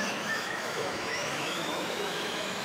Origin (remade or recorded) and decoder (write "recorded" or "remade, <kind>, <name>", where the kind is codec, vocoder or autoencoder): remade, autoencoder, DAC-VAE